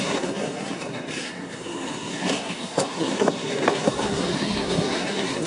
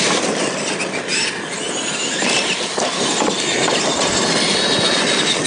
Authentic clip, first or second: second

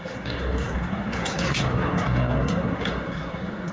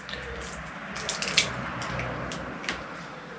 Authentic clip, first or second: second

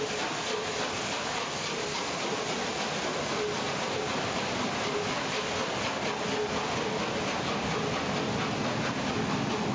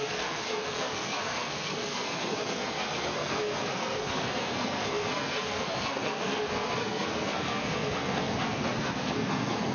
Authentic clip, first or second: first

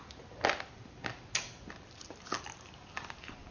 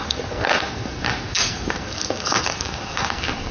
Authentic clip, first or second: first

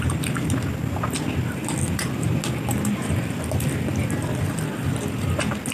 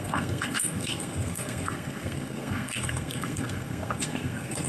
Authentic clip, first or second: first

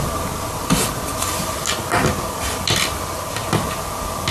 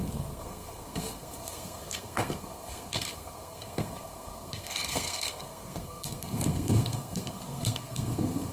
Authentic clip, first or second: first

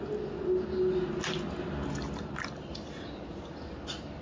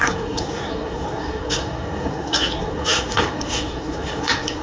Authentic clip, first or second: first